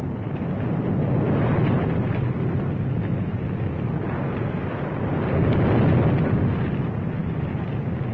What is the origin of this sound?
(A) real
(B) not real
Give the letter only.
A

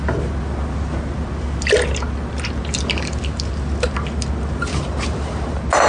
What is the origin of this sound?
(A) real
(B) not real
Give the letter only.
A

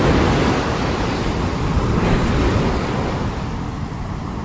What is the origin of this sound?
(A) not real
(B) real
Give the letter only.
B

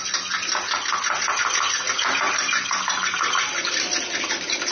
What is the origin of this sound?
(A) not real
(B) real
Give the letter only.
B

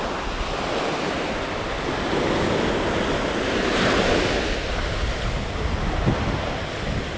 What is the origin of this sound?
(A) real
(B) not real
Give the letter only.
A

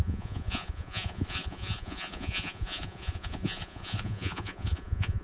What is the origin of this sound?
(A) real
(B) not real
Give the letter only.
B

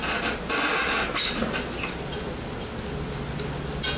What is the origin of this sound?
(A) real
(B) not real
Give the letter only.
A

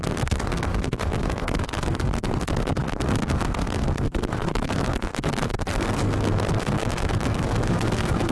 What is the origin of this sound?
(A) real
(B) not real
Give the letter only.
B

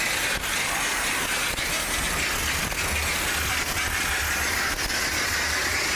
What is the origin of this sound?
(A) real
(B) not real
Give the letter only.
A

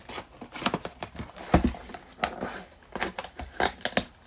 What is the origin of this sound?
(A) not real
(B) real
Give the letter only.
B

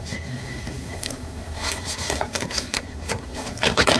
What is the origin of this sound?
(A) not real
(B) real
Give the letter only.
A